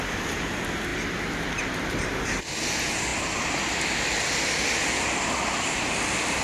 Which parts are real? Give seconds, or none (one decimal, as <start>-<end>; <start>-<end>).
0.0-6.4